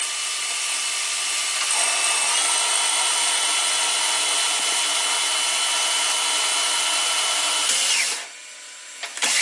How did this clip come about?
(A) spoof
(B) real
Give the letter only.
B